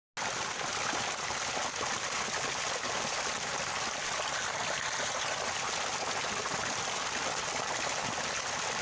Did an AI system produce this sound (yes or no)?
no